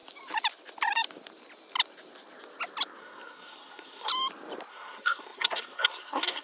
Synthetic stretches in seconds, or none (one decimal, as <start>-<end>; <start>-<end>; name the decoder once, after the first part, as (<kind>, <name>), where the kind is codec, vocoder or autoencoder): 3.0-4.1 (codec, SNAC); 4.7-6.4